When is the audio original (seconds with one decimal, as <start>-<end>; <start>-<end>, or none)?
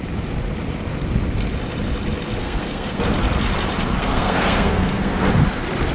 0.0-2.4; 3.0-4.0; 5.3-5.9